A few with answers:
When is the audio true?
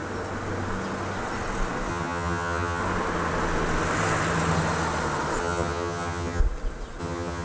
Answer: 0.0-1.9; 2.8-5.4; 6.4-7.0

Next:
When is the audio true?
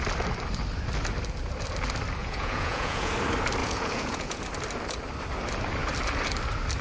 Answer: 0.0-2.2; 3.1-3.6; 4.4-6.8